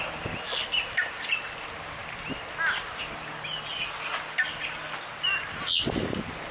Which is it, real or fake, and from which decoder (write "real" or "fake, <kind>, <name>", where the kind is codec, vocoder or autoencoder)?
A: real